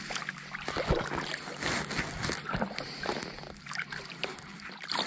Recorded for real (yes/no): yes